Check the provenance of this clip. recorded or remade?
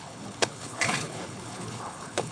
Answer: remade